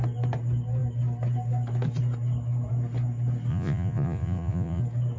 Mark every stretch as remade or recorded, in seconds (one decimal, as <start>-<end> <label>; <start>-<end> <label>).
0.0-3.5 recorded; 3.5-4.8 remade; 4.8-5.2 recorded